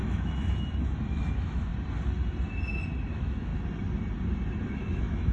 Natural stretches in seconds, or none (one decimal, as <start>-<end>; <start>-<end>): 1.7-3.1; 3.5-4.7